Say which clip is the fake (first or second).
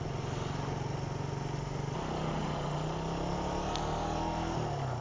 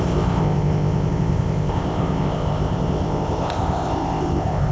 second